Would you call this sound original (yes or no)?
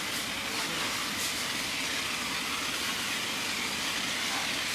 yes